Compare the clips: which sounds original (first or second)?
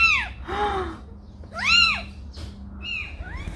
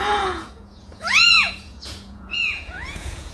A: first